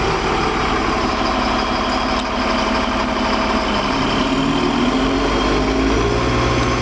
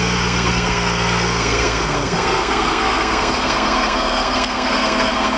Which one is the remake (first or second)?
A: second